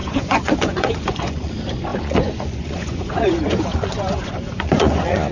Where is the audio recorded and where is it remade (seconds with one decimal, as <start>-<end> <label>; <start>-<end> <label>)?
0.0-1.5 remade; 1.5-1.9 recorded; 1.9-5.3 remade